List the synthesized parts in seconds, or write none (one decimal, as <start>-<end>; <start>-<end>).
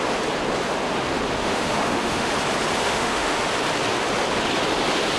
1.4-2.3; 2.8-3.4